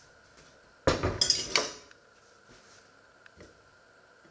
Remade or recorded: recorded